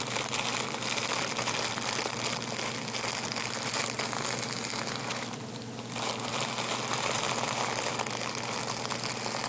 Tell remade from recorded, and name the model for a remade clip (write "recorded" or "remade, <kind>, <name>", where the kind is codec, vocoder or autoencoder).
recorded